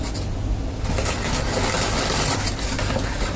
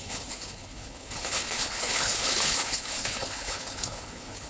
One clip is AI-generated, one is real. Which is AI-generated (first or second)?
second